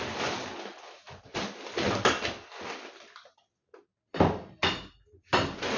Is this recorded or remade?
recorded